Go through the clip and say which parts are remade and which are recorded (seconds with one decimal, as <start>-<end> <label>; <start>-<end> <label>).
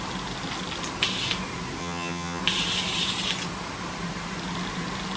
0.0-1.8 recorded; 1.8-2.4 remade; 2.4-5.2 recorded